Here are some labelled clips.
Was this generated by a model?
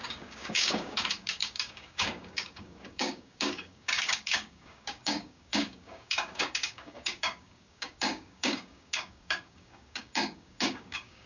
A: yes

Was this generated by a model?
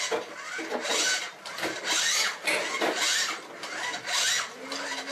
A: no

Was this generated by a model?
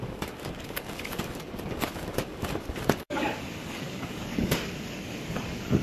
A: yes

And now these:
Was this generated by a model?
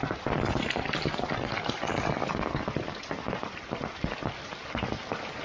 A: no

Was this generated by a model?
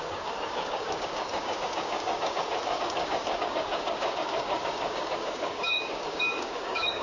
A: yes